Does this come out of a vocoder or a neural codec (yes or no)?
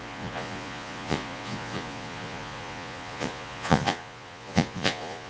yes